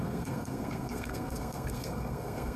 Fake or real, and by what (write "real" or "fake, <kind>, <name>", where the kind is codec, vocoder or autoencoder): fake, codec, SNAC